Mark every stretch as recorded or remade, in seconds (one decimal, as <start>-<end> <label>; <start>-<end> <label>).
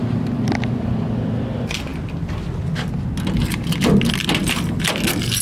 0.0-5.4 recorded